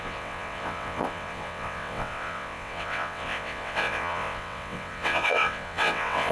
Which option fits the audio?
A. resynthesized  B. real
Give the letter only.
A